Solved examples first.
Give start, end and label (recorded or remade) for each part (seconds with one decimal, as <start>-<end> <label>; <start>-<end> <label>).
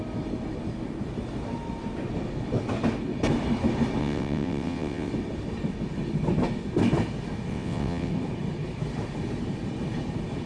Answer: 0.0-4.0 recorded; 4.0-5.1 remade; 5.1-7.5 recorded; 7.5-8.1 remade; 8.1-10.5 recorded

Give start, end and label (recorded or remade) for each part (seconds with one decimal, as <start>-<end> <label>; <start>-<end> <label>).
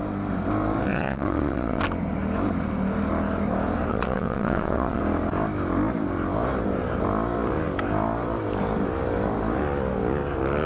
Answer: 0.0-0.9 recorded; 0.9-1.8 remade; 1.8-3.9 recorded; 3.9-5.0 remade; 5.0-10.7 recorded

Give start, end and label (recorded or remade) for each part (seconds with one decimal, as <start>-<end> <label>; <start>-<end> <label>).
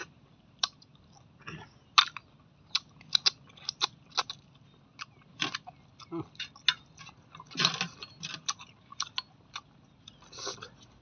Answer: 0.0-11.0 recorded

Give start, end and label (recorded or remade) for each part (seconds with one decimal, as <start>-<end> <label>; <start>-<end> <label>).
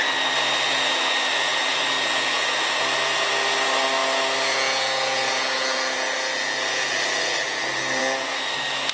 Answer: 0.0-8.9 recorded